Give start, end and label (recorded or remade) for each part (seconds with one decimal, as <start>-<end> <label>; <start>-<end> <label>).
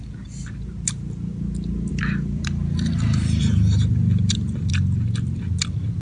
0.0-1.9 recorded; 1.9-4.7 remade; 4.7-6.0 recorded